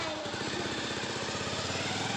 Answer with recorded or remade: recorded